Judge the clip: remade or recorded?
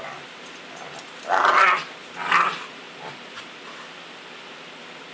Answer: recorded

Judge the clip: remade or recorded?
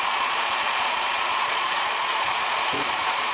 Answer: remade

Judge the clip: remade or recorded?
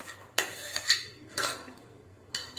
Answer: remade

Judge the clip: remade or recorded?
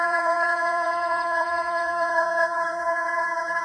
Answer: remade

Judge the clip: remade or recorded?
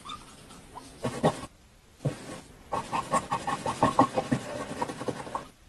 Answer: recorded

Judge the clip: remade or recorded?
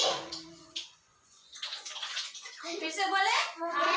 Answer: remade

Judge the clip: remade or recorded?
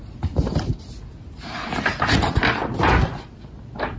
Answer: recorded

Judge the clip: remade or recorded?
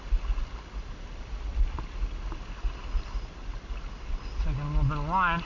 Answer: recorded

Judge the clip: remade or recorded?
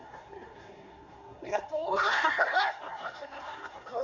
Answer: remade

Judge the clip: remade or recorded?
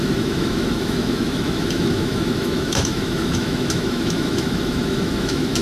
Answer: remade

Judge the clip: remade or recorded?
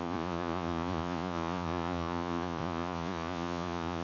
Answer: remade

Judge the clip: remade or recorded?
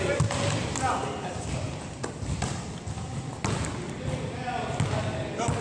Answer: recorded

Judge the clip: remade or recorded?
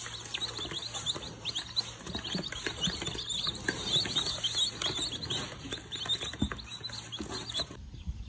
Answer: recorded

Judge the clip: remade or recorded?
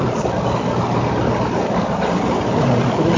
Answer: recorded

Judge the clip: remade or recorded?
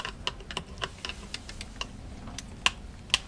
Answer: recorded